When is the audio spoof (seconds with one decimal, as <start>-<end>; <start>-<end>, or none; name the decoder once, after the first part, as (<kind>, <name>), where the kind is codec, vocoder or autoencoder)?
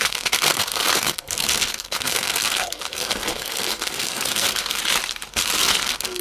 0.0-4.8 (codec, SNAC); 5.3-6.2